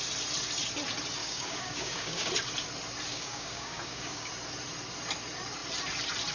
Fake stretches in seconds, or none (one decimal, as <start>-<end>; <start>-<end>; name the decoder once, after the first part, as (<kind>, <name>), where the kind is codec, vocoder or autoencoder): 1.2-2.3 (codec, DAC); 3.1-4.3